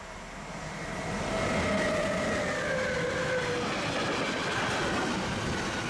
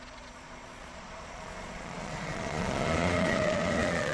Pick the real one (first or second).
first